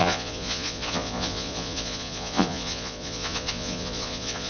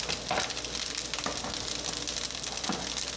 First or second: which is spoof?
first